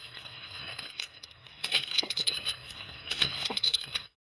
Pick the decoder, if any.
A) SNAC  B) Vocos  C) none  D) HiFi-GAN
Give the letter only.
A